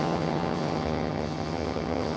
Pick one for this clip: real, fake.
fake